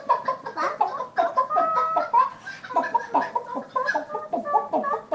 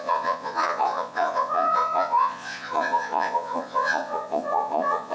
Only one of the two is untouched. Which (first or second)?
first